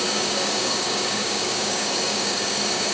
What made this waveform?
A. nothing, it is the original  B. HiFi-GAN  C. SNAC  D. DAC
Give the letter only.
D